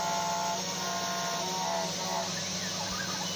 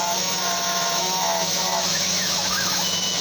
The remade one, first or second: second